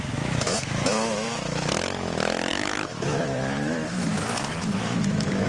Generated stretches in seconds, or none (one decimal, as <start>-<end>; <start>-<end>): 0.0-5.5